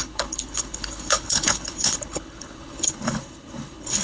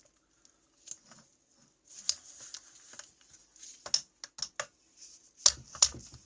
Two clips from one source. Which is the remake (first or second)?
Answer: first